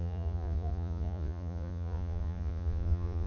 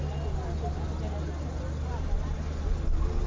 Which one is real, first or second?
second